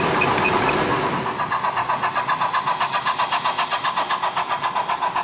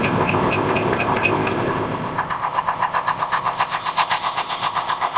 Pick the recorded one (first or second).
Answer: first